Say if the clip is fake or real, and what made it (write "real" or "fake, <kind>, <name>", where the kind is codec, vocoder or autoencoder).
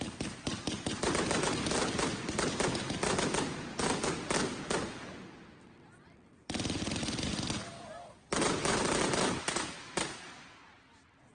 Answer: real